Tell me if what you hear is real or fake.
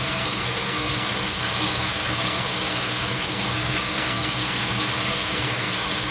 fake